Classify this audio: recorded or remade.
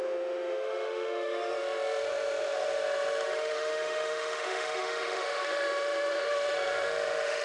remade